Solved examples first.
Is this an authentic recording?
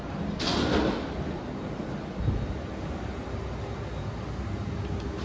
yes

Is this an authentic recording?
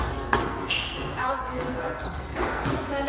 no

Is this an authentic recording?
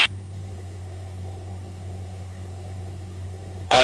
no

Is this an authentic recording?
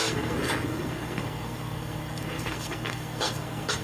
no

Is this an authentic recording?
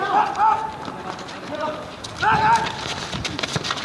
yes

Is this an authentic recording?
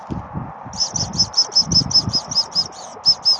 yes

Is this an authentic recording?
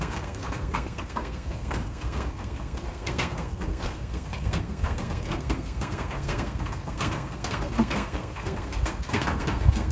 no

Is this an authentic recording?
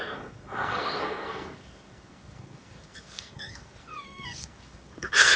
no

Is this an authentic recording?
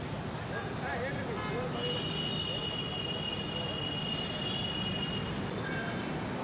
yes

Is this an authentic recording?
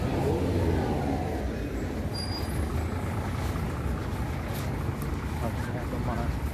yes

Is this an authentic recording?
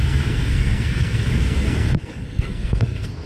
no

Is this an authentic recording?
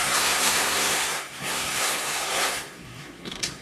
no